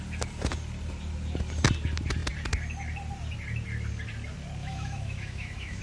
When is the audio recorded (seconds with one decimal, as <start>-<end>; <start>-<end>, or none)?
0.0-4.6